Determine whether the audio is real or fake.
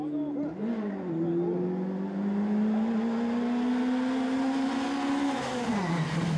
real